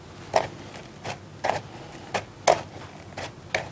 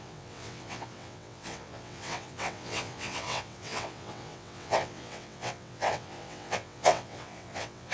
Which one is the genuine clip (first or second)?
first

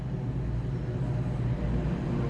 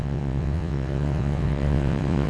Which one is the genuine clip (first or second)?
first